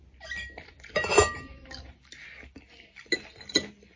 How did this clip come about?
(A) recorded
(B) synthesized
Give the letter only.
A